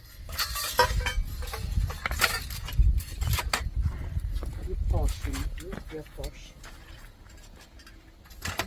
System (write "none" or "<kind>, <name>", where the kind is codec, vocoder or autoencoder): none